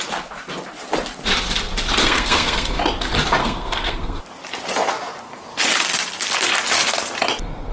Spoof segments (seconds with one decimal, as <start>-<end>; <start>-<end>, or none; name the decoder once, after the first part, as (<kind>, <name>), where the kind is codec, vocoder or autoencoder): 2.0-2.8 (codec, SNAC); 3.4-4.2